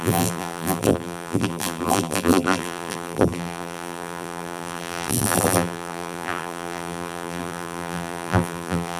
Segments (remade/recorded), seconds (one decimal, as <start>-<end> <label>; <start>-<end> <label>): 0.0-9.0 remade